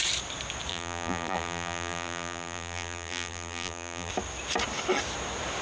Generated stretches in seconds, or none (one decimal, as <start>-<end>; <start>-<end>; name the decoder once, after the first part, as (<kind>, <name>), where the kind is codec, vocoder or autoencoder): 0.7-4.1 (vocoder, BigVGAN v2)